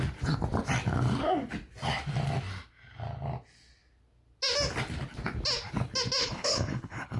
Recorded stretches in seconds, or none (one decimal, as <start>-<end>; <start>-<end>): 0.0-6.2